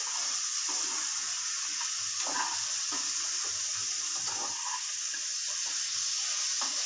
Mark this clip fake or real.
real